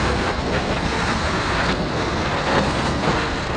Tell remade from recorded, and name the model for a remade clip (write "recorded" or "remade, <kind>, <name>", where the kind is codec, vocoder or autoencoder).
remade, codec, SNAC